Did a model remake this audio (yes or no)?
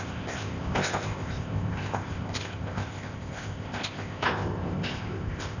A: yes